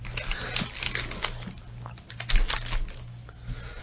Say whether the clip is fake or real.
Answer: real